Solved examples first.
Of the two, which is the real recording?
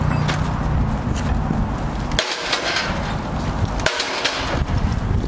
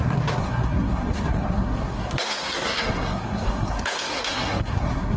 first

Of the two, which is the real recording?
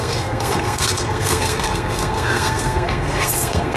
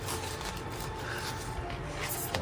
second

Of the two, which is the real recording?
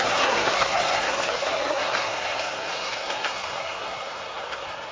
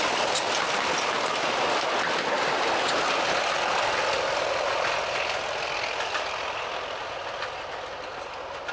second